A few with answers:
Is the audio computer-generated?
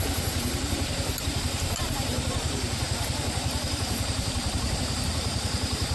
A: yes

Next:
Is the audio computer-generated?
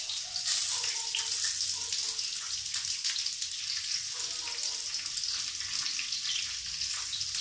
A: no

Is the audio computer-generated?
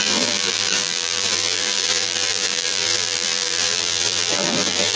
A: yes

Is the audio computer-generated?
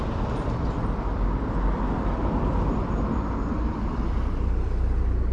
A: yes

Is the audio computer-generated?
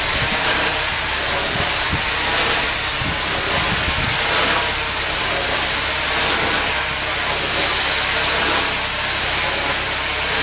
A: no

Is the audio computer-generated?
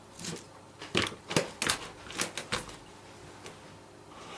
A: no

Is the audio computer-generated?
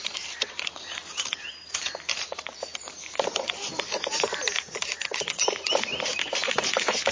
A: yes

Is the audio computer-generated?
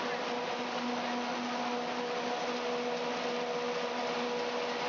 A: no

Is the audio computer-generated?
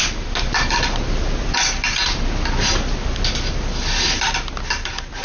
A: no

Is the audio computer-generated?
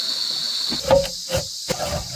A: no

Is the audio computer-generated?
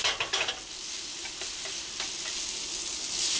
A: no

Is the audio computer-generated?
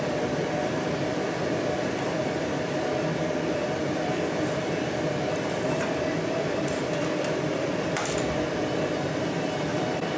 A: yes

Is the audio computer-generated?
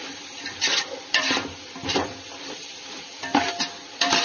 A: yes